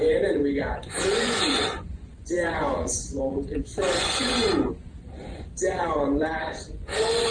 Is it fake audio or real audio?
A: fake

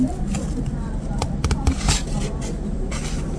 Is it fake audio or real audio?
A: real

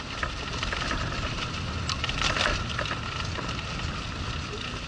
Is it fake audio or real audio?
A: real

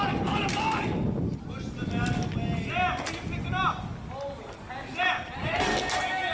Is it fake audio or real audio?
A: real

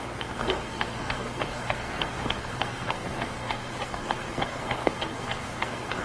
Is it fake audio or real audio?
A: fake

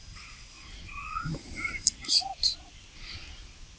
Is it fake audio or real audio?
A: real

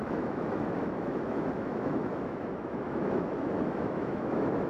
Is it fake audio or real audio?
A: fake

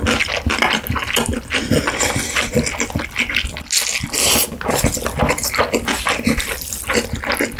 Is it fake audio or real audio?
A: real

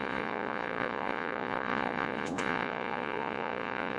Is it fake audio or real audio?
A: fake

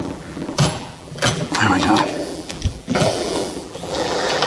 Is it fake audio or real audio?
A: fake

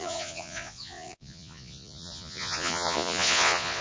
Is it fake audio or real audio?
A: fake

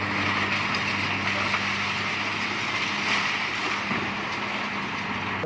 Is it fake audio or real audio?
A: real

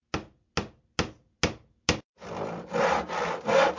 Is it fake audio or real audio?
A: real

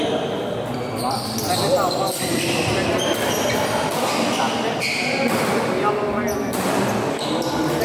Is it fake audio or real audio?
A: real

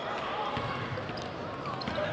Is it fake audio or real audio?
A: real